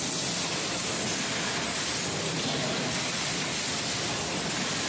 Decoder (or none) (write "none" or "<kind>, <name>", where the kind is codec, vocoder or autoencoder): none